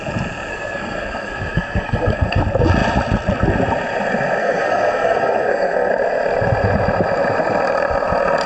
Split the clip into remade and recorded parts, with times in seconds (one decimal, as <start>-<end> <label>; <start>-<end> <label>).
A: 0.0-0.5 recorded; 0.5-2.4 remade; 2.4-4.4 recorded; 4.4-5.9 remade; 5.9-8.5 recorded